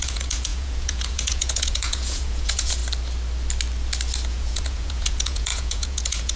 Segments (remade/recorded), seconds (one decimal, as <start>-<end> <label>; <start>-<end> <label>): 0.0-2.8 remade; 2.8-4.3 recorded; 4.3-6.4 remade